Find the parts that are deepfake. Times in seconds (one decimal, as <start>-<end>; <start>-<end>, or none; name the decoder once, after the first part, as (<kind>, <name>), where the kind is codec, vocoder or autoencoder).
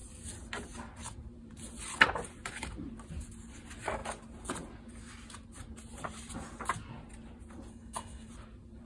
7.7-8.3 (codec, SNAC)